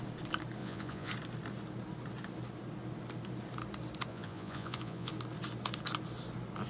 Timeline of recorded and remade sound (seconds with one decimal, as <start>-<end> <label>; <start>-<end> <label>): 0.0-0.6 recorded; 0.6-1.1 remade; 1.1-4.1 recorded; 4.1-5.1 remade; 5.1-6.7 recorded